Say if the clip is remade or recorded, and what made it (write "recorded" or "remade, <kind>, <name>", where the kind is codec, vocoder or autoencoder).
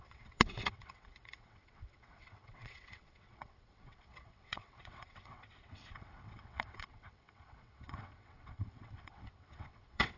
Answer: remade, vocoder, WaveNeXt